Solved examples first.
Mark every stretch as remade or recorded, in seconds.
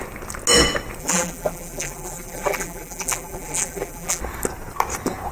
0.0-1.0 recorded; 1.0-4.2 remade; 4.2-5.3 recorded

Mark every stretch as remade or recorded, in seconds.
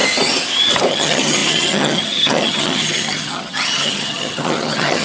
0.0-0.9 recorded; 0.9-5.0 remade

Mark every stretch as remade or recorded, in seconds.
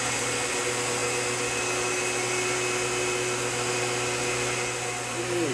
0.0-5.5 recorded